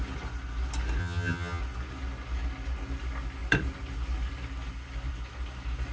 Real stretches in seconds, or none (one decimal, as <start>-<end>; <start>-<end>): 0.0-1.0; 1.6-5.9